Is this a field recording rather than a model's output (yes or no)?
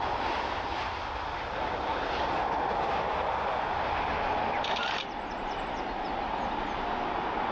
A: yes